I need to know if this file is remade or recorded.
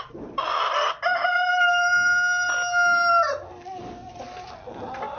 recorded